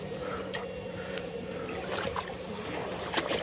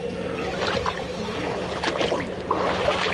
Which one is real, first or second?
second